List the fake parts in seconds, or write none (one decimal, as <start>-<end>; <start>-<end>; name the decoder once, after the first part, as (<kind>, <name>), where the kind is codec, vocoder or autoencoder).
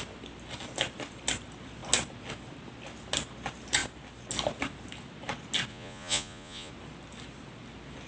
5.7-6.7 (vocoder, Vocos)